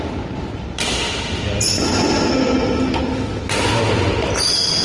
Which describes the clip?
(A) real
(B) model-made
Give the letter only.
A